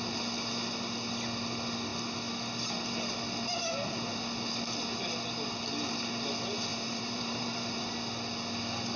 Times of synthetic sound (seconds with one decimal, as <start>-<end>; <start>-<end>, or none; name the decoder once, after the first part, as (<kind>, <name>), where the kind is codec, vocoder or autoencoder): 6.7-7.9 (vocoder, BigVGAN v2)